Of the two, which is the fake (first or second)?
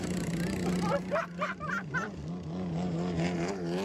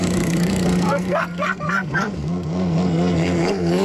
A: second